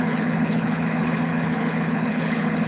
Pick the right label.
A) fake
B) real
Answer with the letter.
A